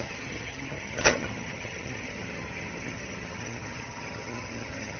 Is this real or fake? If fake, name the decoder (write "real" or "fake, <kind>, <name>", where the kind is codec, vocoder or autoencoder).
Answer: fake, vocoder, HiFi-GAN